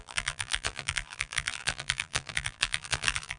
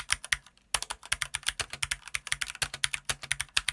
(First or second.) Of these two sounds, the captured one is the second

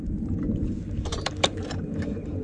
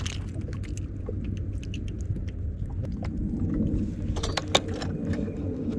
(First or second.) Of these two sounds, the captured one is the second